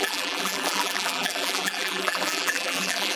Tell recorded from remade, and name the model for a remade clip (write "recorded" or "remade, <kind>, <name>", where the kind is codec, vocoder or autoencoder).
remade, vocoder, BigVGAN v2